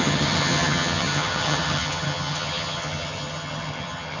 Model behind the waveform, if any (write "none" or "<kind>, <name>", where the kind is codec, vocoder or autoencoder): vocoder, HiFi-GAN